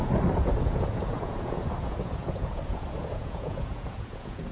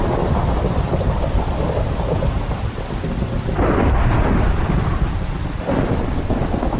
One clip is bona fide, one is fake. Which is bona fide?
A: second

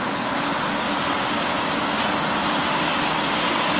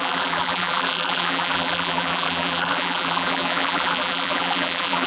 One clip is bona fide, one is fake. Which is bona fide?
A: first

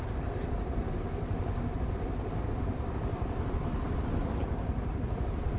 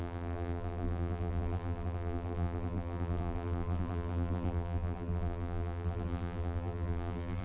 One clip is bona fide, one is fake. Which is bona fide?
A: first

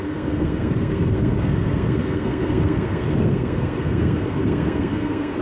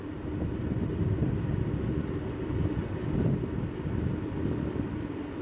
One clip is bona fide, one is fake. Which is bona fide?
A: second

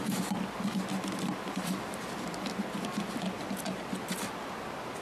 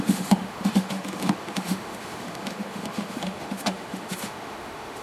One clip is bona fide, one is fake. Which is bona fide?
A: first